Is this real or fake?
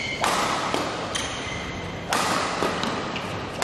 real